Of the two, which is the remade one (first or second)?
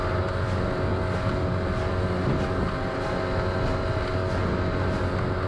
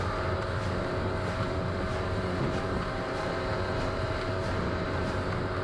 second